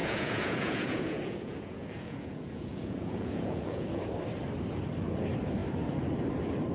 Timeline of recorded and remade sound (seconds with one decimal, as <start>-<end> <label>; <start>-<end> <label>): 0.0-4.0 remade; 4.0-6.7 recorded